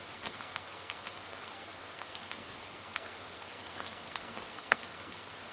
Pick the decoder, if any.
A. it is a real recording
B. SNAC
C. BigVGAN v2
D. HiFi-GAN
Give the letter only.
B